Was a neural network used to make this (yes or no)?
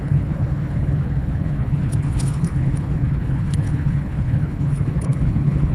yes